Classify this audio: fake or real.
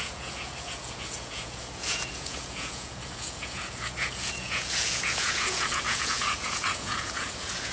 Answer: fake